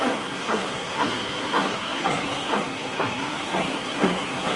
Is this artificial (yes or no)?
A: yes